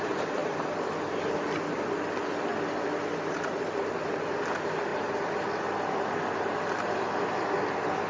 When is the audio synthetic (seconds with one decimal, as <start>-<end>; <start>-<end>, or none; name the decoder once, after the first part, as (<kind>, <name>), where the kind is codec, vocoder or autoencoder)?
2.5-4.0 (vocoder, BigVGAN v2)